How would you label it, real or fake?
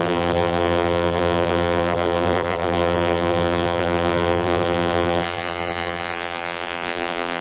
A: fake